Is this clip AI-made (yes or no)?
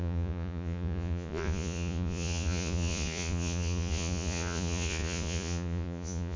yes